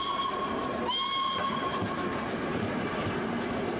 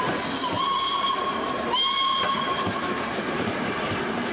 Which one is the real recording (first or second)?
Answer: first